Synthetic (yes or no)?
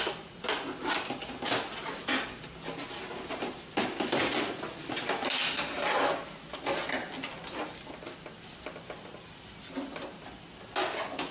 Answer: no